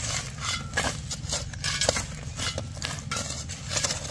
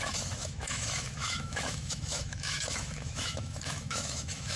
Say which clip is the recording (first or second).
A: first